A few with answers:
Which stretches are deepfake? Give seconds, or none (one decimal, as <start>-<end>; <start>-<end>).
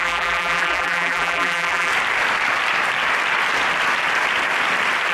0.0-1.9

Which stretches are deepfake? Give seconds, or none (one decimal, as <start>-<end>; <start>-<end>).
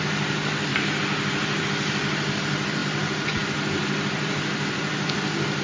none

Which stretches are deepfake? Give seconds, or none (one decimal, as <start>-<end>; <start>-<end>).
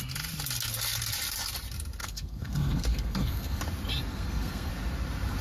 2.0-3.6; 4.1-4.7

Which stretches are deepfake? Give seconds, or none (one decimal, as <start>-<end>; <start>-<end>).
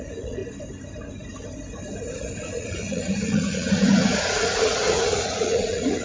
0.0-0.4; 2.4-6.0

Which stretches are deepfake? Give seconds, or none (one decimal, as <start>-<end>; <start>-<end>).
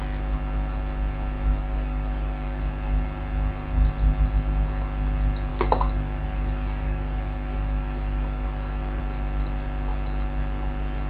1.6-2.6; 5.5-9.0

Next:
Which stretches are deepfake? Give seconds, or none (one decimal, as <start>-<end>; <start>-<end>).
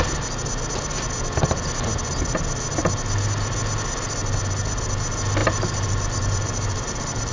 5.4-7.3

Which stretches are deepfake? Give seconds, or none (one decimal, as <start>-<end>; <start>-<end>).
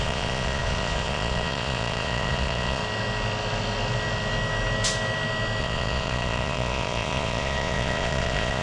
0.0-2.8; 5.6-8.6